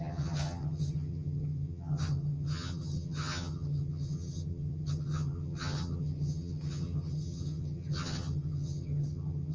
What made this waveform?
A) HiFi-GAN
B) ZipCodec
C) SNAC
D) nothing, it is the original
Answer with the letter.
A